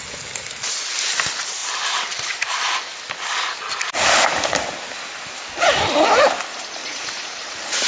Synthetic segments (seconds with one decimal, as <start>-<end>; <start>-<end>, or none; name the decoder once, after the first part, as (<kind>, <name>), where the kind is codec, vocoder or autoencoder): 6.8-7.9 (vocoder, Vocos)